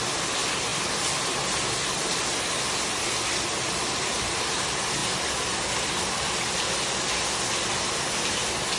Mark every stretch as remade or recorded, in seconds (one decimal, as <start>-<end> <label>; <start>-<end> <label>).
0.0-8.8 recorded